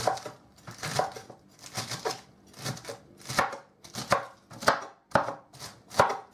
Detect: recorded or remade recorded